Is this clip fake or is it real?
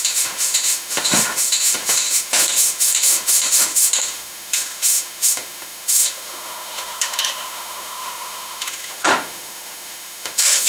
fake